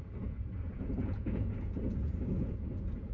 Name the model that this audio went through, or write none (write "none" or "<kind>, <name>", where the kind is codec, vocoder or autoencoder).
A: vocoder, Vocos